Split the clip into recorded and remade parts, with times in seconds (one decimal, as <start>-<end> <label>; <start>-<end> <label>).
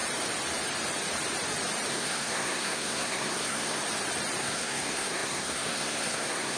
0.0-1.9 recorded; 1.9-3.8 remade; 3.8-4.4 recorded; 4.4-6.6 remade